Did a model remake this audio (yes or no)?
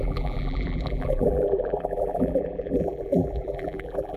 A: yes